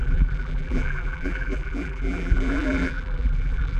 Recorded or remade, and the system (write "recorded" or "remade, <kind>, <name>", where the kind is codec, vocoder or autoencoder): remade, vocoder, BigVGAN v2